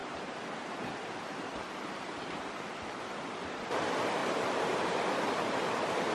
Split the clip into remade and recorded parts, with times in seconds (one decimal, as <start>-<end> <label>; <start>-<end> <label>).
0.0-2.5 remade; 2.5-4.2 recorded; 4.2-5.1 remade; 5.1-6.1 recorded